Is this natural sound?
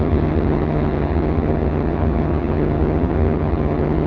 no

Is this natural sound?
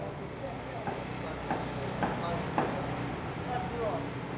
yes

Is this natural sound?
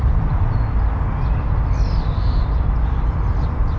yes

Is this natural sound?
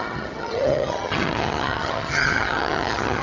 no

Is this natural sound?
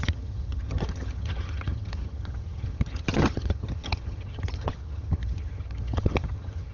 no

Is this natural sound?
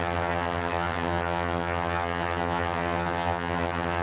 no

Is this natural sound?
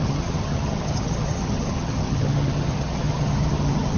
no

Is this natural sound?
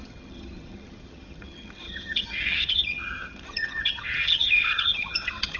no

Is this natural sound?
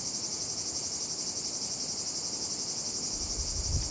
yes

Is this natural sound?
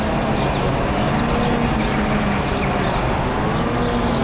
yes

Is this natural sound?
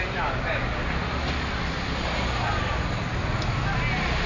yes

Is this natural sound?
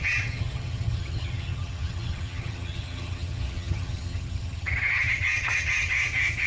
no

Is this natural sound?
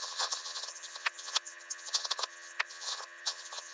no